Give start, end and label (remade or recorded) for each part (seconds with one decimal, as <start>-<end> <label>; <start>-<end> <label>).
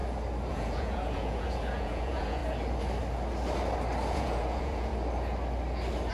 0.0-0.5 recorded; 0.5-2.4 remade; 2.4-4.1 recorded; 4.1-4.9 remade; 4.9-6.1 recorded